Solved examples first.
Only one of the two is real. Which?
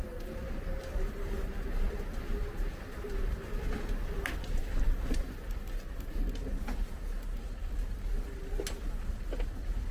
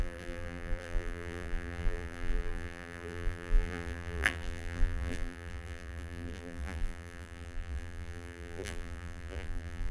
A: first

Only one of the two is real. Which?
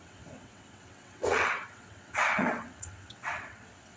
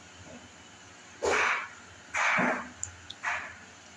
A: second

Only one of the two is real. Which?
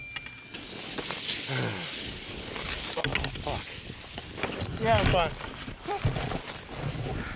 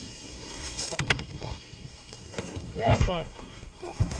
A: first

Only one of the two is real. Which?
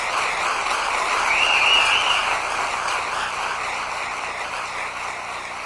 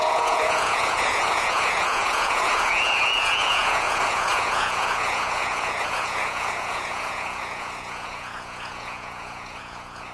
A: first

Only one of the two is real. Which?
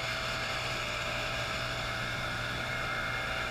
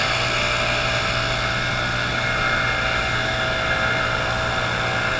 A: second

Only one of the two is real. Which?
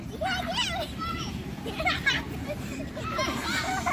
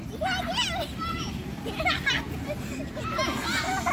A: second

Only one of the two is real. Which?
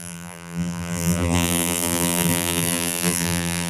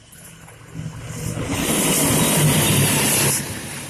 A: second